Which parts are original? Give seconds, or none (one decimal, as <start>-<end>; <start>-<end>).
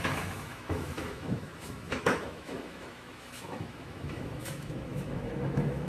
none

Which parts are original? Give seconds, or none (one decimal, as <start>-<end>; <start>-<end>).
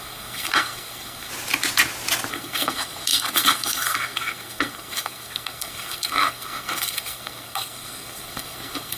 1.3-2.3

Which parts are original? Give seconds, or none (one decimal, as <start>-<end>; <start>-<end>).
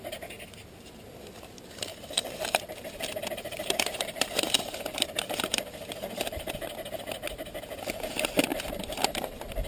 0.0-1.9; 6.9-8.5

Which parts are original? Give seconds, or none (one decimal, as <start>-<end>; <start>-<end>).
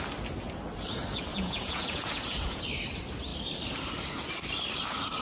0.0-1.3; 2.6-5.2